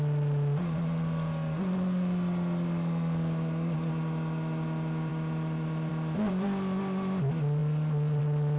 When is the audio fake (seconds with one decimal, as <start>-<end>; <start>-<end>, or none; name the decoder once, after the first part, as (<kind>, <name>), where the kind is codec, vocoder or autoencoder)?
none